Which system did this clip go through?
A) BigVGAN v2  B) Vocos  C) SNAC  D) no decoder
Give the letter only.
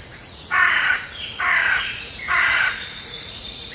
B